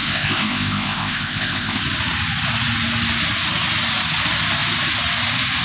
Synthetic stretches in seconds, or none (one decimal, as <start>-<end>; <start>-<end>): 0.0-1.8